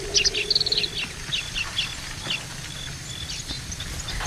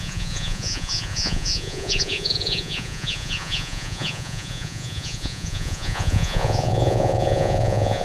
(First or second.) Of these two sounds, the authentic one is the first